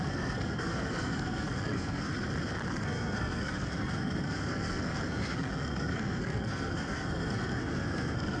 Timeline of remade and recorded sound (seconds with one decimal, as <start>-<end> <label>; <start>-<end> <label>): 0.0-2.1 remade; 2.1-2.7 recorded; 2.7-8.4 remade